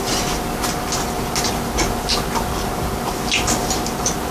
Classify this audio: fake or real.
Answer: real